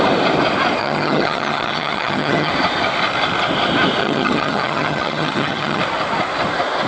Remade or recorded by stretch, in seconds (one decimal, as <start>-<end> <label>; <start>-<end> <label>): 0.0-0.8 recorded; 0.8-2.5 remade; 2.5-4.0 recorded; 4.0-5.8 remade; 5.8-6.9 recorded